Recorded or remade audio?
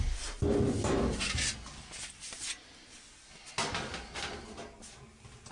recorded